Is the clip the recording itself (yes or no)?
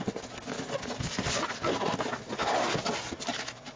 yes